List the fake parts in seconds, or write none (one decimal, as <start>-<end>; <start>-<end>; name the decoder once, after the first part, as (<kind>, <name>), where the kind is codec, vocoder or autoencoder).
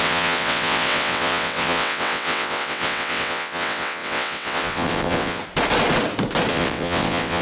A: 0.0-5.4 (vocoder, WaveNeXt); 6.5-7.4